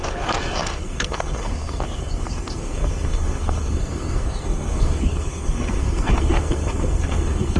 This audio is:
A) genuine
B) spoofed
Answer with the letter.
B